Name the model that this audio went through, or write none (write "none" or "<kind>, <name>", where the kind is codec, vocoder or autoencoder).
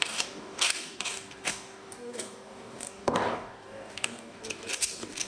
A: codec, DAC